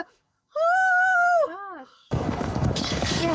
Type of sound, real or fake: fake